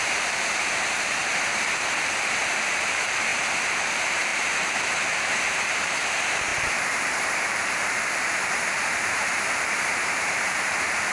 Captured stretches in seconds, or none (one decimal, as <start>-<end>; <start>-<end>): 1.2-2.4